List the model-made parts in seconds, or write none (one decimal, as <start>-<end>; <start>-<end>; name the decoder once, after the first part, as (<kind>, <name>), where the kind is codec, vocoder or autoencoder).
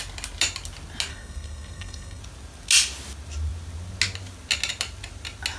1.1-2.2 (codec, SNAC)